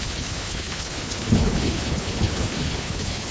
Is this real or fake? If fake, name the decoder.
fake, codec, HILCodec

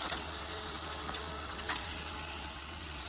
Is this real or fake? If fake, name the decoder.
fake, vocoder, WaveNeXt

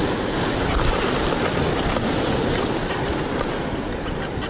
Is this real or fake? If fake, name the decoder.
real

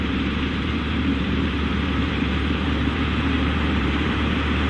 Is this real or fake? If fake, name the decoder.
fake, vocoder, BigVGAN v2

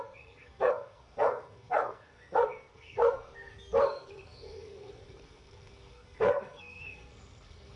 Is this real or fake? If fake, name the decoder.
fake, codec, SNAC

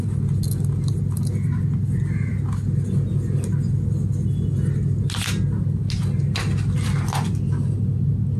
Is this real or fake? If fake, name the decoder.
real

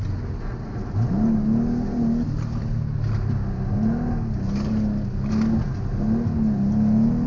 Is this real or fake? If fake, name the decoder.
real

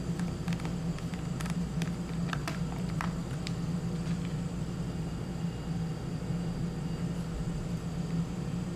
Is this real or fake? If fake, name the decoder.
real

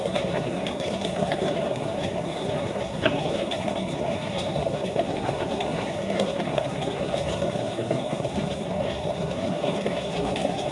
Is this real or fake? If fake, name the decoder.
fake, codec, SNAC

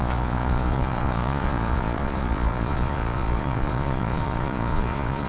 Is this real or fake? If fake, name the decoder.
fake, vocoder, Vocos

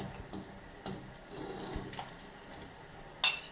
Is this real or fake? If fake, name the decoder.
real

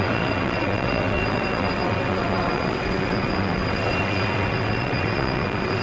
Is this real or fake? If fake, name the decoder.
fake, vocoder, WaveNeXt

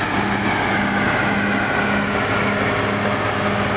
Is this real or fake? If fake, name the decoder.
real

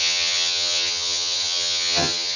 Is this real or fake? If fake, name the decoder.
fake, vocoder, HiFi-GAN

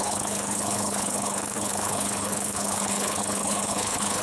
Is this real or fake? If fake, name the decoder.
fake, codec, HILCodec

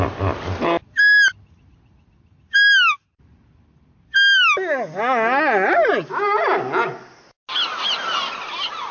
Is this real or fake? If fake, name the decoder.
real